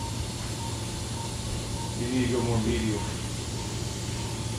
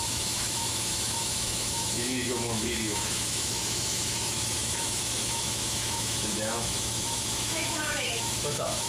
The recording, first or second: first